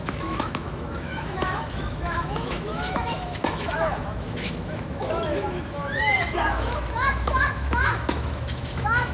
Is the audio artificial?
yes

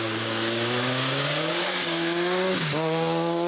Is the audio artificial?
yes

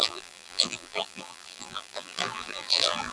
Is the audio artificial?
yes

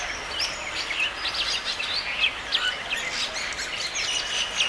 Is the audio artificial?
no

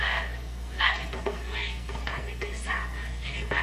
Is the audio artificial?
yes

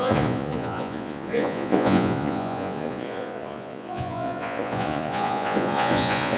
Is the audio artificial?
yes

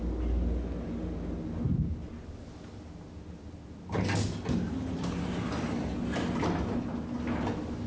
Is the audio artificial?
no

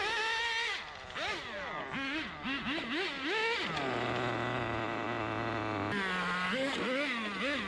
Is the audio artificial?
no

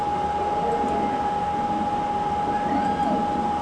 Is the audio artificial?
no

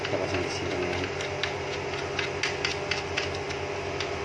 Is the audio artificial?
no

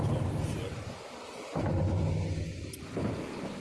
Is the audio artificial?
no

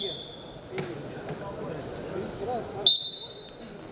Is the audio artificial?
no